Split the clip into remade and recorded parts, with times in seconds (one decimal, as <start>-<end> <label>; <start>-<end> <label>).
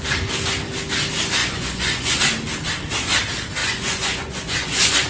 0.0-1.4 recorded; 1.4-2.2 remade; 2.2-3.6 recorded; 3.6-5.1 remade